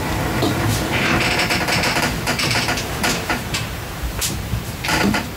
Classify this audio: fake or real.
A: fake